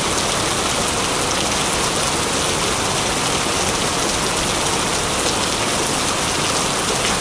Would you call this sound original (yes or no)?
yes